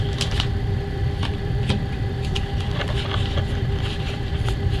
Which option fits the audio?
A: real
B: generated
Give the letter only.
B